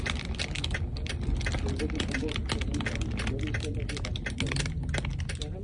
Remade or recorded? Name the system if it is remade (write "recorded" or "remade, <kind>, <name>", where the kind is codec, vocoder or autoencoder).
recorded